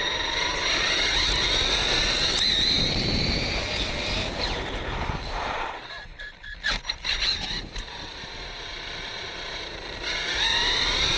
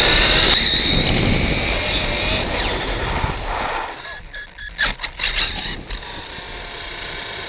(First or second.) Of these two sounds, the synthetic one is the first